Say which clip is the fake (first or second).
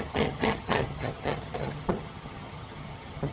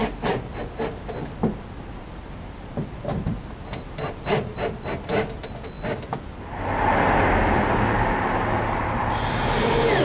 first